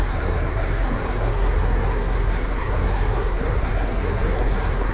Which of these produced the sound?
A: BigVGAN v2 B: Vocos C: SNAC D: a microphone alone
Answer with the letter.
C